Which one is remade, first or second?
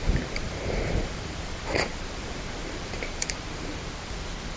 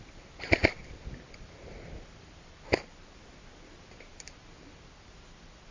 first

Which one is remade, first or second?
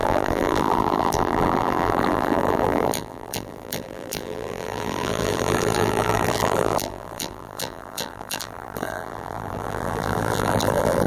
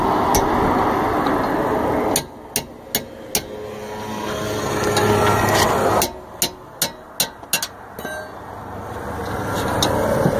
first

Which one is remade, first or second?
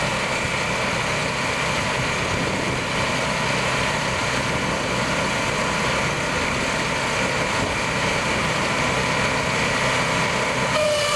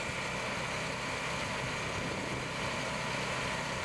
first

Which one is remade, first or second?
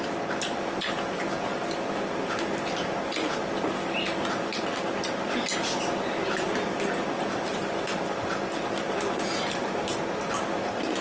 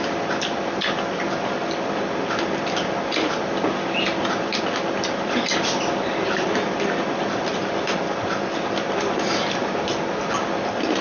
second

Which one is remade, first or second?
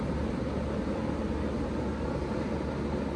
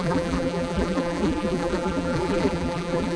second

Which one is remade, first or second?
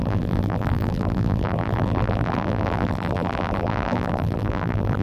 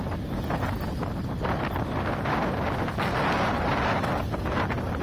first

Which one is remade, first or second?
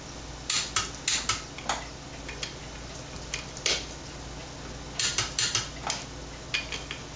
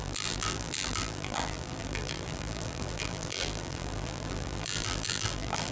second